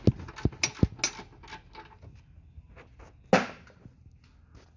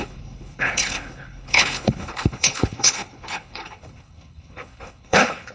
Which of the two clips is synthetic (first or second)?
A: second